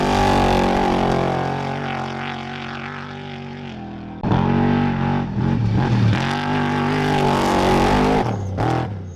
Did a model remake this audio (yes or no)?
no